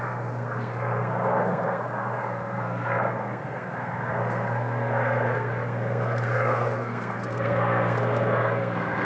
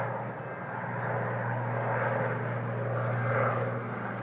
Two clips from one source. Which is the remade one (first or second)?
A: first